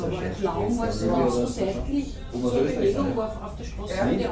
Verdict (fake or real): real